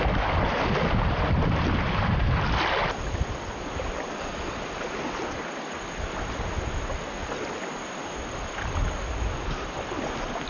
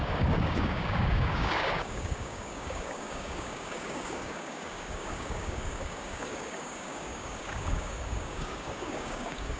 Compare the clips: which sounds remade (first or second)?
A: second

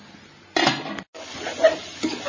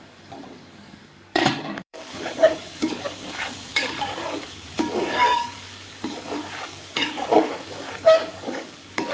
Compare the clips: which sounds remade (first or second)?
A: second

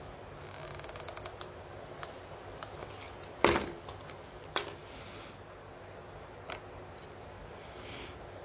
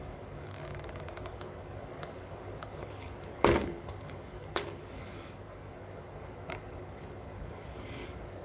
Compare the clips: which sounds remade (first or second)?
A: second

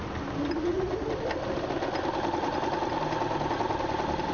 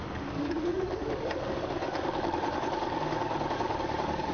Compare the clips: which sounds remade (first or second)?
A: second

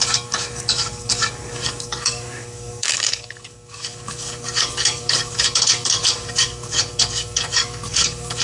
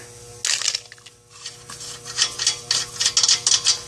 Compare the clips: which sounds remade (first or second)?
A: first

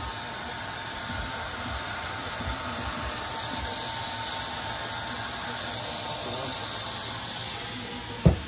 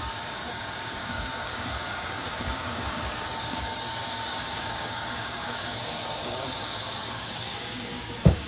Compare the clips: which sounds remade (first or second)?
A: second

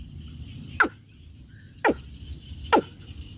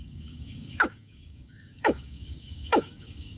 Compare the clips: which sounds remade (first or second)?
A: second